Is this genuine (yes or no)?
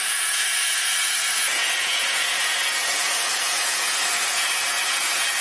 no